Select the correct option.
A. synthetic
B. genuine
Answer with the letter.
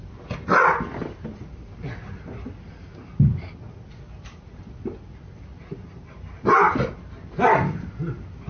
B